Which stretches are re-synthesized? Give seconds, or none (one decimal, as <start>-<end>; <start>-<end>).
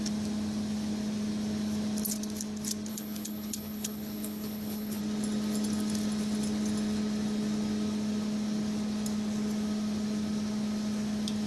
2.9-5.0